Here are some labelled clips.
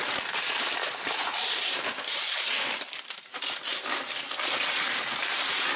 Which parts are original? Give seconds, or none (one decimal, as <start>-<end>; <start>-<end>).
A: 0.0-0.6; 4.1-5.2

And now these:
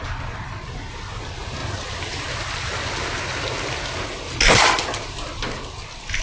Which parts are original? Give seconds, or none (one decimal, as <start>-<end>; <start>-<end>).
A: 0.0-6.2

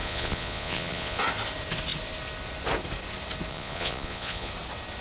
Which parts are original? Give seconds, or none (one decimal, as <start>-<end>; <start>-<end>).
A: 1.2-3.5; 4.5-5.0

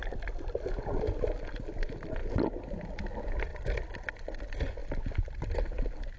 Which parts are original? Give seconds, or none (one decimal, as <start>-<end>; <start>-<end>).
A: 0.8-2.2; 3.0-3.5; 4.1-4.8; 5.8-6.2